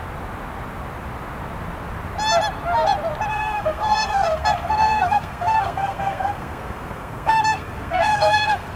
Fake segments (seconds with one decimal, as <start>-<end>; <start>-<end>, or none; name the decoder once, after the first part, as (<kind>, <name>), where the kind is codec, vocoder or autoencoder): 3.3-8.8 (codec, SNAC)